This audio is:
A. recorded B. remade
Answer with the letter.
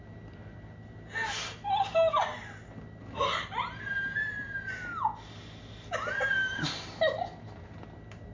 A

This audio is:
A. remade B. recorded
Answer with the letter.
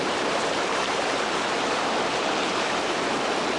A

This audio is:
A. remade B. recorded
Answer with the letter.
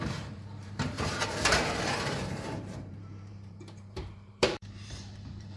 A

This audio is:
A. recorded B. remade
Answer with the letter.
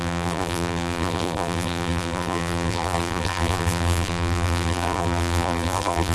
B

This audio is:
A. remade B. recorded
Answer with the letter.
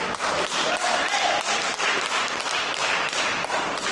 A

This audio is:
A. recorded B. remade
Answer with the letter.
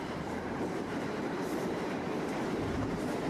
B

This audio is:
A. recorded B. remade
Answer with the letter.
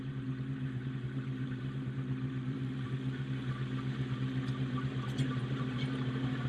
B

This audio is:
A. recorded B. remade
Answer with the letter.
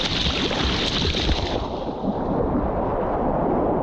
B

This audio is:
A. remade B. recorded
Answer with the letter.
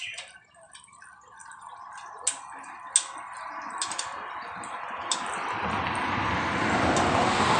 B